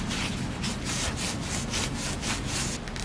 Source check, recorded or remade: recorded